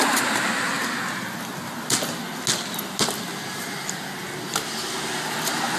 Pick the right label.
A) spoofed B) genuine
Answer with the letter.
B